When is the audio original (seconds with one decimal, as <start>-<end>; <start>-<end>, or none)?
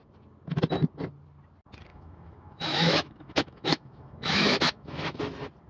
0.0-1.9; 5.2-5.7